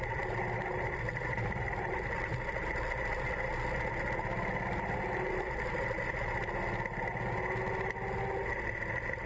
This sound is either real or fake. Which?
real